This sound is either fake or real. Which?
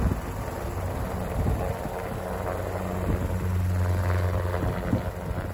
real